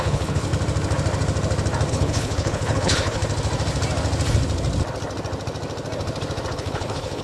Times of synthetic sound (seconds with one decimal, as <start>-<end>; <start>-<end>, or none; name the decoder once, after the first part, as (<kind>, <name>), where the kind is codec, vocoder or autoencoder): 0.0-0.5 (codec, HILCodec); 1.9-3.2; 6.5-7.2